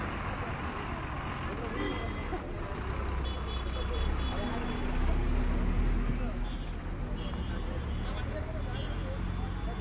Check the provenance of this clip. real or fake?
real